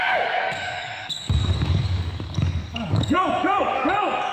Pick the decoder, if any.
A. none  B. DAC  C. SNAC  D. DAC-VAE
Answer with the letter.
B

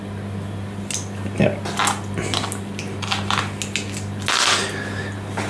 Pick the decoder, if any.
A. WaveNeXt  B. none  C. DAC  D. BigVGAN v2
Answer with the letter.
B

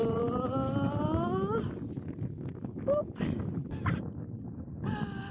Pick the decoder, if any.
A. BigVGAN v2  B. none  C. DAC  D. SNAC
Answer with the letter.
B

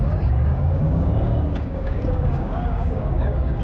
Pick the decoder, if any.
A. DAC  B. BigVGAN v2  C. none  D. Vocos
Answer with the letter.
A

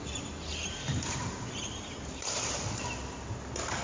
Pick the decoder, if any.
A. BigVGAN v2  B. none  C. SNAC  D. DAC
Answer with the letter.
B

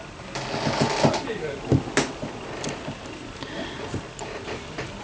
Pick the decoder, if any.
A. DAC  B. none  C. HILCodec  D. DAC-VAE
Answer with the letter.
B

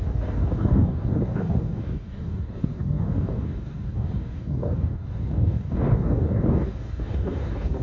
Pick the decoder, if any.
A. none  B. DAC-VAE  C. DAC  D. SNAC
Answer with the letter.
C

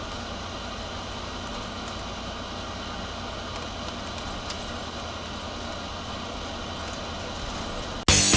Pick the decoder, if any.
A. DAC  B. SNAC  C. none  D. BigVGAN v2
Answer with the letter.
C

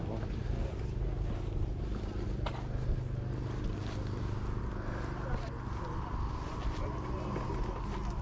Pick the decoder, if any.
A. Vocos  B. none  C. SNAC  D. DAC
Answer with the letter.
B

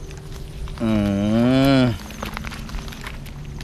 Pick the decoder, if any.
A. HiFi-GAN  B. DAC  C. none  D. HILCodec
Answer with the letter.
C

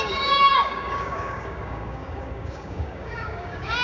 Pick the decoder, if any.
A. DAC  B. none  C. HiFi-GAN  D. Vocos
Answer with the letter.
A